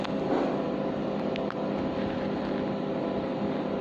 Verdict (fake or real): real